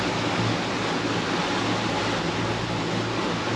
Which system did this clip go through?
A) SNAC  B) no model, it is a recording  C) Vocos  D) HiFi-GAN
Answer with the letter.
B